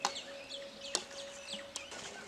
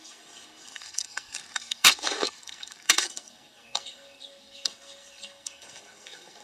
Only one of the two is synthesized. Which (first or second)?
second